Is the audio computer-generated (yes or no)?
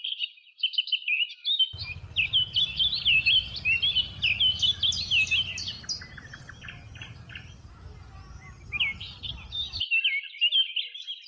no